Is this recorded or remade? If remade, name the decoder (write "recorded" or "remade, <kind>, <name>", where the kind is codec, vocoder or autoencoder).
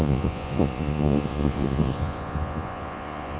remade, vocoder, Vocos